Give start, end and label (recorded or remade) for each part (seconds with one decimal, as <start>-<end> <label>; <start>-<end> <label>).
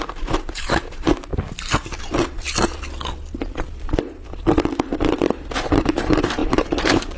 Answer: 0.0-1.3 remade; 1.3-5.6 recorded; 5.6-7.2 remade